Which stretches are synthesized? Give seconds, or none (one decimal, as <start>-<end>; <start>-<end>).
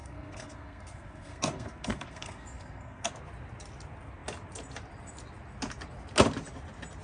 0.0-3.1